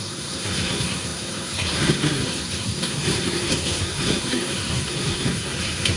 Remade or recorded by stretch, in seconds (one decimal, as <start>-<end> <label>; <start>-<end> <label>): 0.0-6.0 remade